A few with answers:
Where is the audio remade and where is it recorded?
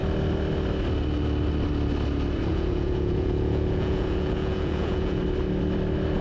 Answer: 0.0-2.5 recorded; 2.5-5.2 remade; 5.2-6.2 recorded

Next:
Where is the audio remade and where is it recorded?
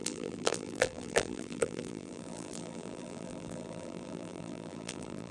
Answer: 0.0-5.3 remade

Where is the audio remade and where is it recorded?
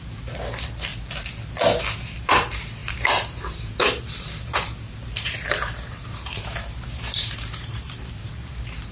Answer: 0.0-0.9 remade; 0.9-1.8 recorded; 1.8-8.9 remade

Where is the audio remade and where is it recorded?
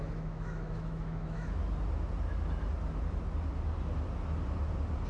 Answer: 0.0-1.6 remade; 1.6-5.1 recorded